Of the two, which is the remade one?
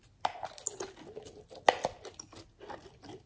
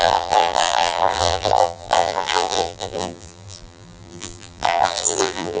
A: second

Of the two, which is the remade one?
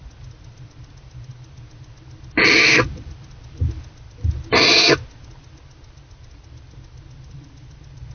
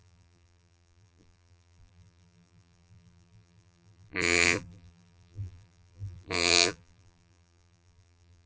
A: second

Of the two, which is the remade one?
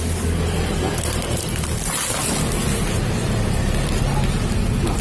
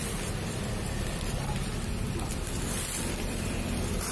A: second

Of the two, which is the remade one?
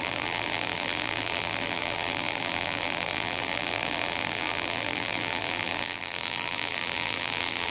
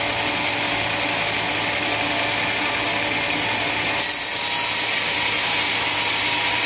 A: first